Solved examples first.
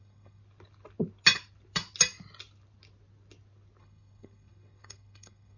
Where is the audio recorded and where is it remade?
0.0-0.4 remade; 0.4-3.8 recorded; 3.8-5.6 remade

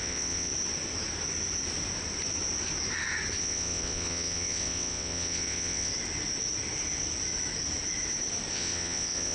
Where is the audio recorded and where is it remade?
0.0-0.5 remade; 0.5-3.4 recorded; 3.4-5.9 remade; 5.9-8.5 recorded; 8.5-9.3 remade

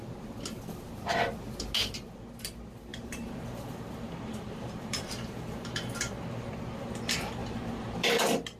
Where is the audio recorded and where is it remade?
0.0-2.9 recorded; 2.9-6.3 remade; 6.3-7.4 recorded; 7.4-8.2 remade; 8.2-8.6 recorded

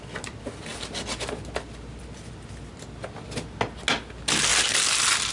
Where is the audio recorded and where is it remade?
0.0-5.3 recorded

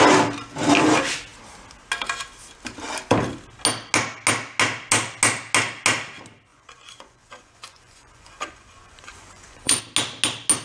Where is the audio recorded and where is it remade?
0.0-6.5 recorded; 6.5-9.8 remade; 9.8-10.6 recorded

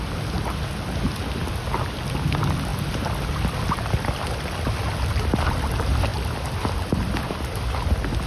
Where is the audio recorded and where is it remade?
0.0-8.3 recorded

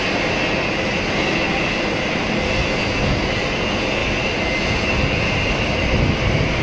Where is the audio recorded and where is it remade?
0.0-6.6 recorded

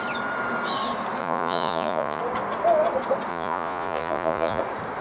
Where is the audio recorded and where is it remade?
0.0-1.2 recorded; 1.2-2.2 remade; 2.2-3.3 recorded; 3.3-4.6 remade; 4.6-5.0 recorded